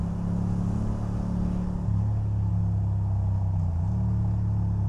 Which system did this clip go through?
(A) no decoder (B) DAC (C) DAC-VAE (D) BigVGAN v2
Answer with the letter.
A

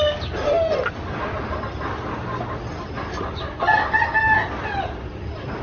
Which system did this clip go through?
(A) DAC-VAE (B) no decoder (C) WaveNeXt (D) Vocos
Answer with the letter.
B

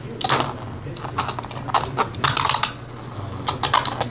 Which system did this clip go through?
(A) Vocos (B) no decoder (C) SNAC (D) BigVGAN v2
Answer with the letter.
B